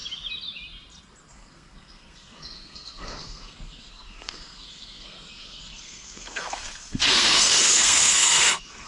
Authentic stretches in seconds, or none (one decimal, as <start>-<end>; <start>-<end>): 0.0-1.3